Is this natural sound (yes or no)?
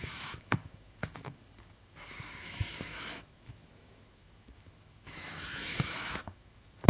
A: no